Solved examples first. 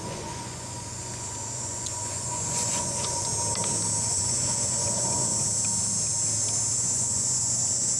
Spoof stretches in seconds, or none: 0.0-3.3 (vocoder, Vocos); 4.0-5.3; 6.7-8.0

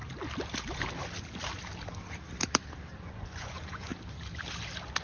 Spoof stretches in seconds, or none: 3.0-3.9 (vocoder, Vocos)